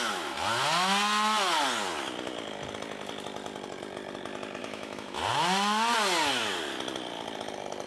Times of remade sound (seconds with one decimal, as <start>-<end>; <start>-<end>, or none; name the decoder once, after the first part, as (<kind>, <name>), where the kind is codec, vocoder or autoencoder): 4.6-5.2 (autoencoder, DAC-VAE)